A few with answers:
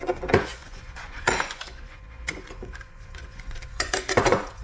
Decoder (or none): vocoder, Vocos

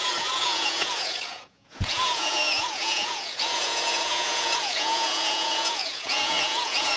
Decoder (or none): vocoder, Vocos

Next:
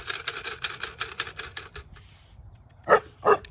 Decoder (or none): none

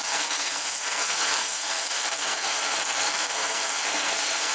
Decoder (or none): codec, SNAC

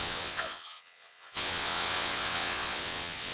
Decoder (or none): vocoder, WaveNeXt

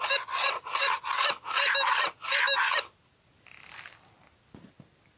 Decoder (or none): none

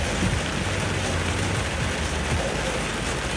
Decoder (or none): none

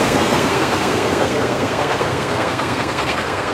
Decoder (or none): codec, SNAC